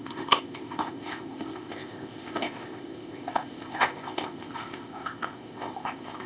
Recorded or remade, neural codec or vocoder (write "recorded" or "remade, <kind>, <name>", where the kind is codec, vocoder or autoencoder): remade, codec, ZipCodec